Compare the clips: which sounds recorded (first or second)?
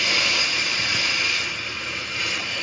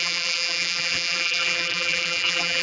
first